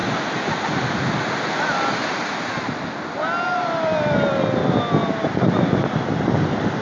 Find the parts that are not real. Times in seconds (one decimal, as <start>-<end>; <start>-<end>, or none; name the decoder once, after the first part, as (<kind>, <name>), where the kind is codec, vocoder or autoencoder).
none